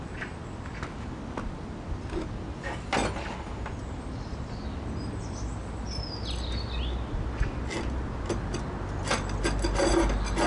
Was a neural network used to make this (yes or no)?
no